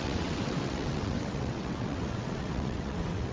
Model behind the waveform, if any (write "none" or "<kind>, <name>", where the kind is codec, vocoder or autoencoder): vocoder, WaveNeXt